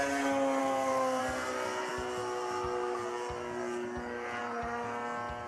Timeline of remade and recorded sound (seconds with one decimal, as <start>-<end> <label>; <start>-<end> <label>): 0.0-0.6 recorded; 0.6-1.2 remade; 1.2-5.5 recorded